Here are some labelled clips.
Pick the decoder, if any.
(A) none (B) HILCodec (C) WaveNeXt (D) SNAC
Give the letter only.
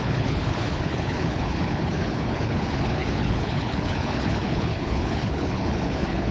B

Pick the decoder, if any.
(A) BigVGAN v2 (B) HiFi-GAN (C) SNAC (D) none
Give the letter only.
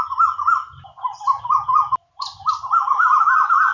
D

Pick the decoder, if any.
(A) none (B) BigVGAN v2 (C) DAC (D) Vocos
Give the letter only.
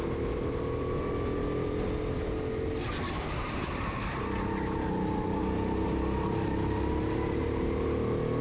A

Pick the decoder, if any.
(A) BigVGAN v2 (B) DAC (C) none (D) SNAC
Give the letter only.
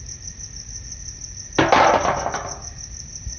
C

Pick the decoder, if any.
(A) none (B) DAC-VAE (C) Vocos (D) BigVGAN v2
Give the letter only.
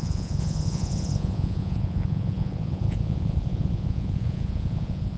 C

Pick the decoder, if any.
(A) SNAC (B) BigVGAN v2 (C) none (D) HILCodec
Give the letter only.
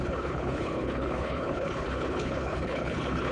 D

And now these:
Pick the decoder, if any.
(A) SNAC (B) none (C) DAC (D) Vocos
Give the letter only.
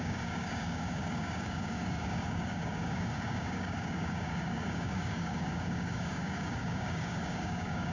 C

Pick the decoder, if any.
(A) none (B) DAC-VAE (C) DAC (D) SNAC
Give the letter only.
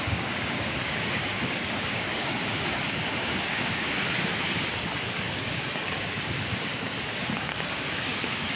C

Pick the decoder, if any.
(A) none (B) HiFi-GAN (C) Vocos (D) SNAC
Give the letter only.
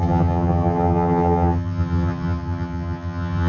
B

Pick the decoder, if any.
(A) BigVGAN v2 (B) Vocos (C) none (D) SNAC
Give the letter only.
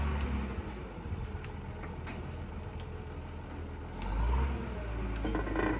C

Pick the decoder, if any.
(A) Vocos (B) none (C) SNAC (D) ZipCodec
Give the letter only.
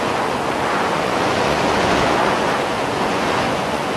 A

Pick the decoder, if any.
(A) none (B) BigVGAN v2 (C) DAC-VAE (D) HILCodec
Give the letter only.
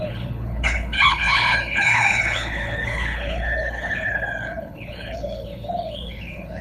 D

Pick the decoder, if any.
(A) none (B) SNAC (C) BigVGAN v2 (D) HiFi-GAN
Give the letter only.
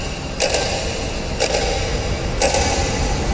A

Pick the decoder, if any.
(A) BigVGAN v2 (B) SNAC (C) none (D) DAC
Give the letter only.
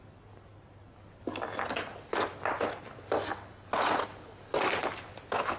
C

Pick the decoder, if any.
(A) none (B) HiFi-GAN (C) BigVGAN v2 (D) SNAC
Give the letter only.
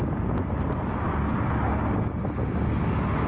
A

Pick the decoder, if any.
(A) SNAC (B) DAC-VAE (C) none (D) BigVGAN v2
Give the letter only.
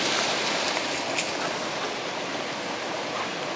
C